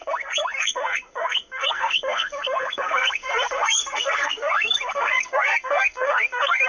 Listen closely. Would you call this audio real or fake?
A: fake